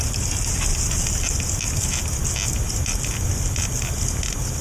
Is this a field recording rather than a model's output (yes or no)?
yes